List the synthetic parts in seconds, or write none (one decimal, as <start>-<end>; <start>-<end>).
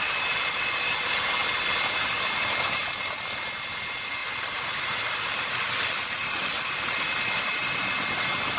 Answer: 4.2-5.5